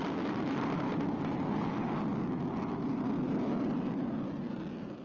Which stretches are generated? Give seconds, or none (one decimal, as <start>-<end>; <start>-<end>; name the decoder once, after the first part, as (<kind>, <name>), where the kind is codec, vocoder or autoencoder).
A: none